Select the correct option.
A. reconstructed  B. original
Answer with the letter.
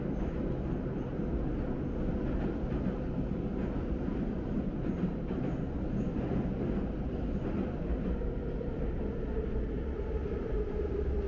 B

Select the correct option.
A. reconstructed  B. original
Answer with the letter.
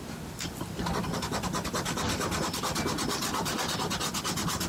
B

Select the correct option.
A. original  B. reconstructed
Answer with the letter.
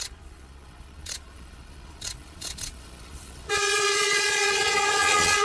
B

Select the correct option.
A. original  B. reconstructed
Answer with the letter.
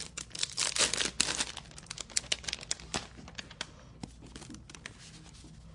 A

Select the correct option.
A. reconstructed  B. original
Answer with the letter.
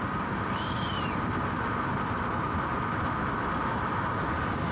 B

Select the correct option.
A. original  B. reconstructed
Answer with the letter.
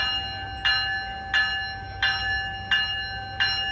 A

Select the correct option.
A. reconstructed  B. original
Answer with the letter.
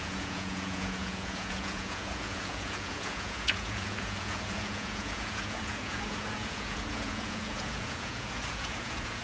A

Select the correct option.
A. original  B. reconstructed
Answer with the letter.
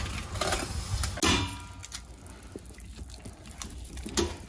A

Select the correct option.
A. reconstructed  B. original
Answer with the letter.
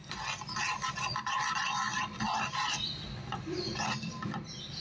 B